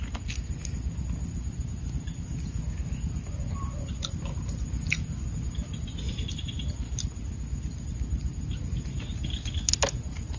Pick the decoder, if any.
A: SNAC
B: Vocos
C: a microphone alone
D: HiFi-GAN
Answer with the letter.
C